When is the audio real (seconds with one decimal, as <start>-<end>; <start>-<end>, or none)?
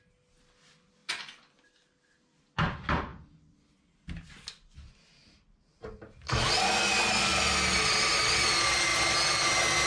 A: 0.0-9.9